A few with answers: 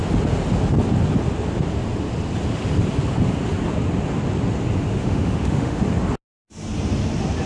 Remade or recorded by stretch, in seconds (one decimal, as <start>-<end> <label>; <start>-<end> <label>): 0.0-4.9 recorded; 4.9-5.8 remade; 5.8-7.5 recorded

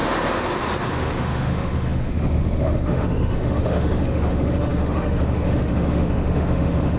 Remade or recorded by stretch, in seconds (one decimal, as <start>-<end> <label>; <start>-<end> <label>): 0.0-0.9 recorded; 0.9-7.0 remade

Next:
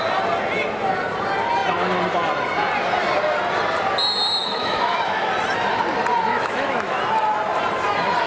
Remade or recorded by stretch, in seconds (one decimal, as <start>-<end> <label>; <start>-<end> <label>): 0.0-4.4 recorded; 4.4-5.3 remade; 5.3-6.3 recorded; 6.3-7.0 remade; 7.0-8.3 recorded

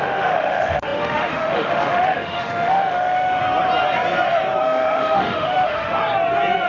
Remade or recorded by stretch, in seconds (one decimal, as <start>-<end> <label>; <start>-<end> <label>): 0.0-3.4 remade; 3.4-4.6 recorded; 4.6-6.0 remade; 6.0-6.7 recorded

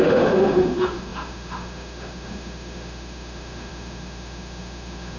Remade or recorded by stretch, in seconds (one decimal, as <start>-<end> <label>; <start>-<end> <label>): 0.0-5.2 remade

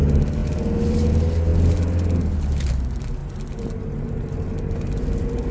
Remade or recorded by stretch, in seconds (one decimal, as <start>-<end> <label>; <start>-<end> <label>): 0.0-5.5 recorded

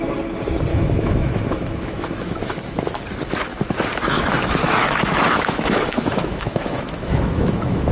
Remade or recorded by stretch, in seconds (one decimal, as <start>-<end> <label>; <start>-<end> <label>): 0.0-0.7 recorded; 0.7-3.0 remade; 3.0-3.5 recorded; 3.5-7.9 remade

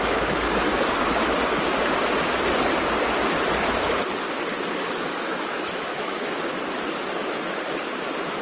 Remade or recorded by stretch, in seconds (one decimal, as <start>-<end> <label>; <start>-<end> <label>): 0.0-0.7 remade; 0.7-4.8 recorded; 4.8-6.5 remade; 6.5-8.4 recorded